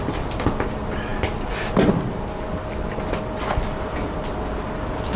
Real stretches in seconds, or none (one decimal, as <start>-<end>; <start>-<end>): 0.0-5.2